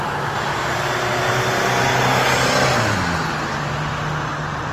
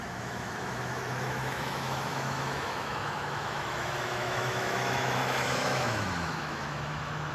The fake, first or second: second